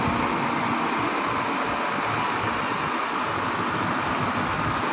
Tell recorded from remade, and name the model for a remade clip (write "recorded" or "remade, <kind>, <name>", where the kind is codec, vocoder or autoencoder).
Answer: recorded